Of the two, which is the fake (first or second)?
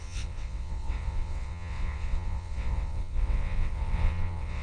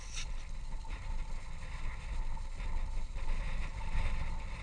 first